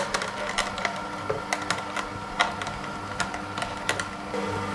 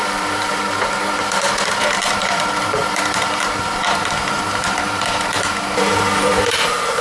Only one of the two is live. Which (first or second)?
first